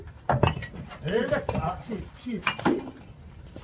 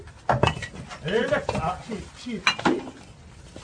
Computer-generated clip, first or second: first